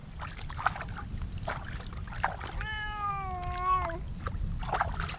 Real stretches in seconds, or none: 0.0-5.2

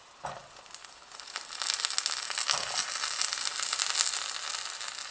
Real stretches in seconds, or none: 0.0-5.1

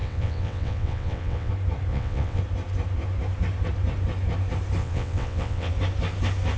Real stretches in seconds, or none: 1.5-1.9; 2.4-4.8; 5.7-6.6

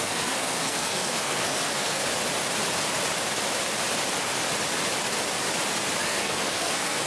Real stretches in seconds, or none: 2.0-6.0

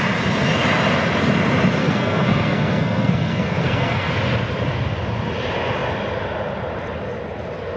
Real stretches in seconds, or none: 0.0-1.8; 4.1-7.8

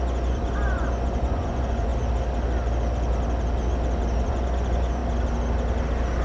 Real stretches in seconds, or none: 1.9-4.2; 5.0-6.2

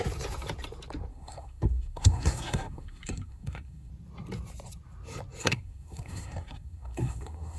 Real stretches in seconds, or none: 0.0-1.1; 3.9-5.4